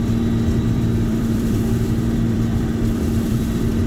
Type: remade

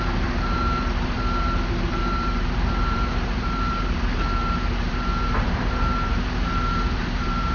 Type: remade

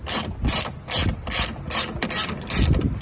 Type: recorded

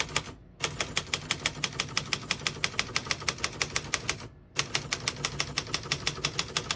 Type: recorded